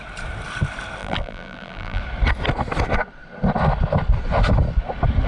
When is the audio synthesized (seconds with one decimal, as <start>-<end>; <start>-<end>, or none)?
1.0-2.0